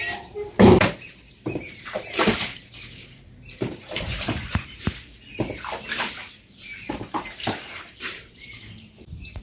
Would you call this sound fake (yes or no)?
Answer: yes